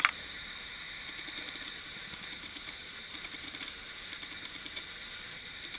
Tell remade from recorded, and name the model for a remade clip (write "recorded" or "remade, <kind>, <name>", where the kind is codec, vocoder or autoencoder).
remade, vocoder, BigVGAN v2